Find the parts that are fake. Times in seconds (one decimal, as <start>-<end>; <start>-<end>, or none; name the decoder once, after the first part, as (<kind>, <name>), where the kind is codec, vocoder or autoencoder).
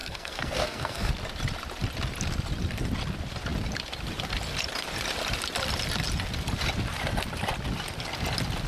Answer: 0.0-1.1 (codec, SNAC)